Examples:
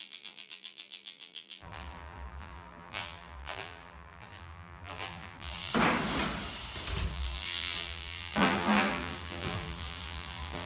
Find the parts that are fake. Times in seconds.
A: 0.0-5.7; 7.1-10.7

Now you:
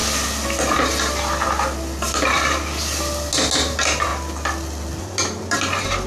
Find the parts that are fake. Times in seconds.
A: 3.6-4.1; 5.0-6.1

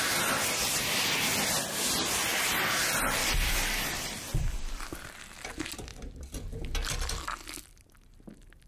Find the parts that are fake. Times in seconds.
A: 2.3-5.5; 5.9-7.6

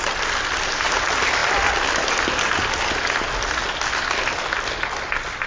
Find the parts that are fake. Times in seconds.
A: none

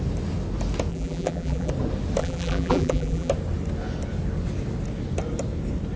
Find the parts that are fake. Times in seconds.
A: 0.9-1.7; 2.2-3.3

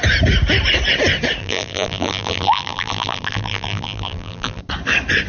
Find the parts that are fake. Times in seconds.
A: 1.4-4.6

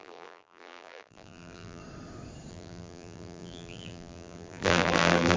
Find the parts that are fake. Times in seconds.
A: 0.0-1.8; 2.5-5.4

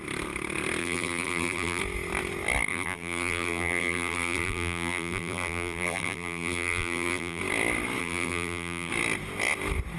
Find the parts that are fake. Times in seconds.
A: 0.8-1.8; 2.7-7.4; 8.0-8.9